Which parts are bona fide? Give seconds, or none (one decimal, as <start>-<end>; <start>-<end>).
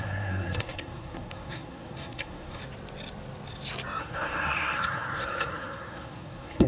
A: 2.6-4.0